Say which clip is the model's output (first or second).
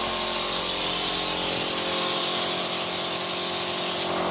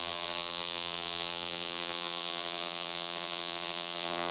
second